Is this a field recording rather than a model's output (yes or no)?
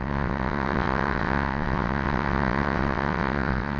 no